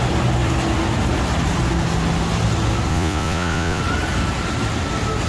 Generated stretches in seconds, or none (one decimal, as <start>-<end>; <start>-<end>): 2.9-3.8